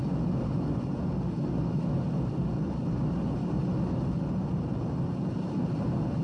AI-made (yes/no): no